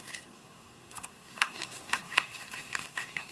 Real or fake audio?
fake